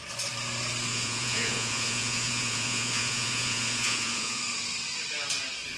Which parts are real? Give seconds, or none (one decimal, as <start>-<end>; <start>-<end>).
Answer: 0.0-0.9; 4.4-5.8